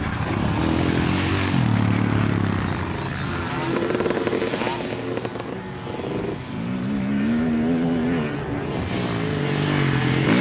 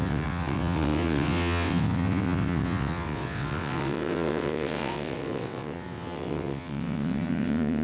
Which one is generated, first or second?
second